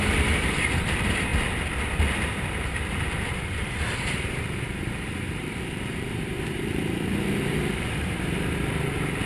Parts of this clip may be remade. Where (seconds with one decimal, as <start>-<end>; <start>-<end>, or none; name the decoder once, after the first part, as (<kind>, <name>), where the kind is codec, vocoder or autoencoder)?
0.0-1.3 (vocoder, BigVGAN v2); 2.9-9.3